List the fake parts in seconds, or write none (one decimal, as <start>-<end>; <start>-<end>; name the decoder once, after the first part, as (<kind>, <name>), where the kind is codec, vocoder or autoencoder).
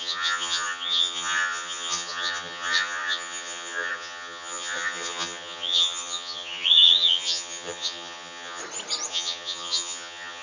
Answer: 0.0-8.6 (vocoder, HiFi-GAN); 9.1-10.4